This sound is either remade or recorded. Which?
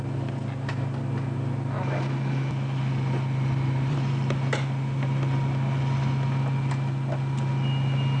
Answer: recorded